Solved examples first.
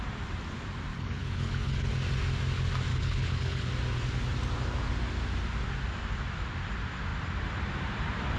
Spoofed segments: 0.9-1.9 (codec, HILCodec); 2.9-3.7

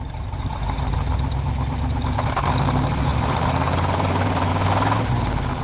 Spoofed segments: 0.0-4.5 (vocoder, BigVGAN v2)

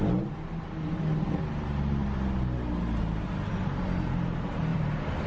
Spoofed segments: 4.7-5.3 (vocoder, BigVGAN v2)

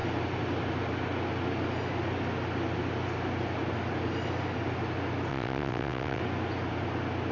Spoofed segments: 5.3-6.2 (vocoder, WaveNeXt)

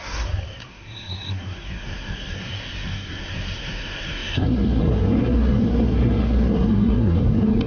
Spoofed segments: 0.0-7.7 (codec, SNAC)

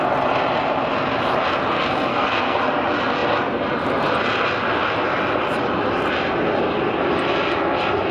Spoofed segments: 2.1-2.6 (codec, SNAC)

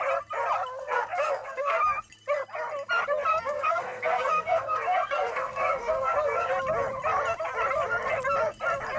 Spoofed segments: 0.8-1.8 (codec, SNAC); 3.3-6.5